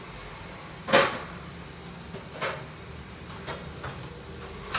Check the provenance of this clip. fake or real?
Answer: real